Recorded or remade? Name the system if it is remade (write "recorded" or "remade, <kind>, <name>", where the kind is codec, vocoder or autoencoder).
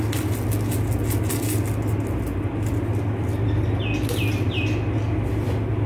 recorded